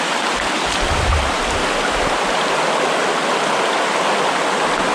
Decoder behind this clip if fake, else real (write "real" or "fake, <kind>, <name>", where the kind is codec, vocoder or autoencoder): real